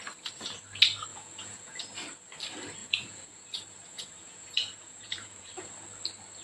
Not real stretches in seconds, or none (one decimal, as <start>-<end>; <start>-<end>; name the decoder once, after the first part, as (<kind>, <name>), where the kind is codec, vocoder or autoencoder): 1.1-1.8 (vocoder, Vocos); 2.8-3.4; 3.9-5.5